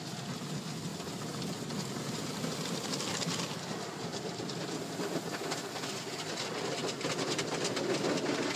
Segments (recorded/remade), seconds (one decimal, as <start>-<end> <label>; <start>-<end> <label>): 0.0-4.1 recorded; 4.1-5.2 remade; 5.2-8.6 recorded